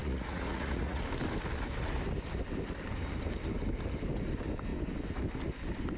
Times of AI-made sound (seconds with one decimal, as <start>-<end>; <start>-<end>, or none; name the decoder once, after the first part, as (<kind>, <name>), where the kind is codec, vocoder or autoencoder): 0.0-1.0 (vocoder, Vocos)